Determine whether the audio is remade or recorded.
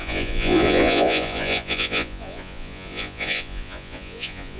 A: remade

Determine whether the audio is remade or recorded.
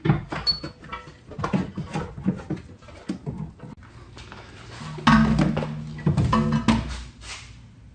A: recorded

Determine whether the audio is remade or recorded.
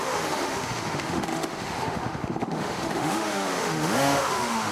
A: remade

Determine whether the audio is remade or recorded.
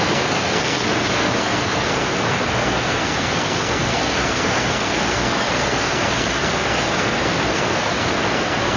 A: remade